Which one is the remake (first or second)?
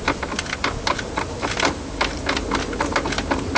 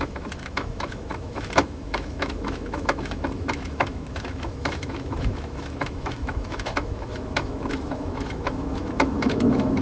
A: second